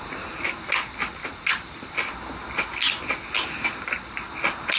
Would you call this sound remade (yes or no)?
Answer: no